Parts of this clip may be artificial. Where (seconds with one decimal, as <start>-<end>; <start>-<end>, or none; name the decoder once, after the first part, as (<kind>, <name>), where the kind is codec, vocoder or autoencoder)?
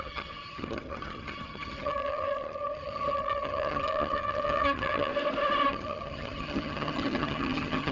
0.0-5.1 (vocoder, HiFi-GAN); 5.7-7.9